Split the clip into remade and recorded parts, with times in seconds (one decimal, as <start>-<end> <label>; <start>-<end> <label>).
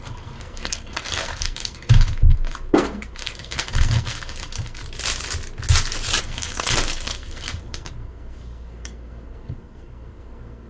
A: 0.0-4.8 remade; 4.8-6.2 recorded; 6.2-10.7 remade